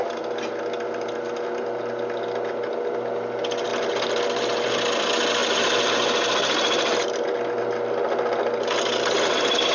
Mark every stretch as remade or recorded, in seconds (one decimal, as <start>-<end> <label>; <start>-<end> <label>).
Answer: 0.0-9.7 recorded